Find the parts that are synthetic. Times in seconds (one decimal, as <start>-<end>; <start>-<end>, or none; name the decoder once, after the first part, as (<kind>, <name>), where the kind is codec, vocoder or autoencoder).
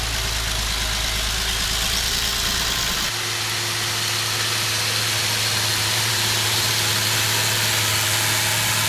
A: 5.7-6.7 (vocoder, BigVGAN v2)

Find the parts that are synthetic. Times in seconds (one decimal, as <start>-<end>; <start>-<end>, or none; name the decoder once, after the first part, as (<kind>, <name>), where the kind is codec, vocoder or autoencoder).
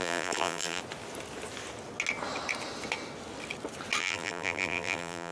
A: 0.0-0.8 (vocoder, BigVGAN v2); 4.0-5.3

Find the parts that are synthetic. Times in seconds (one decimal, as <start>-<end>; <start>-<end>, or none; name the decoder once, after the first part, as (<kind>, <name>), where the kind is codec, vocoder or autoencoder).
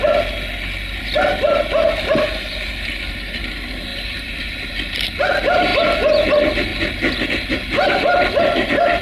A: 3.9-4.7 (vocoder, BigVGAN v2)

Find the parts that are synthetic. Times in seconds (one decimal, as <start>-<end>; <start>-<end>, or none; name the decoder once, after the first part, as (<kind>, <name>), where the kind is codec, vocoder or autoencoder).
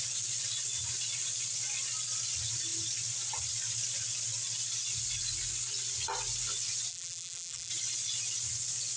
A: 6.9-7.7 (vocoder, BigVGAN v2)